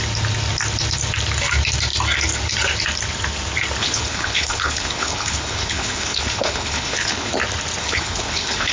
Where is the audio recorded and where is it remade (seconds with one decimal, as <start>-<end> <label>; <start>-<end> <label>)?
0.0-3.8 recorded; 3.8-7.3 remade; 7.3-7.8 recorded; 7.8-8.7 remade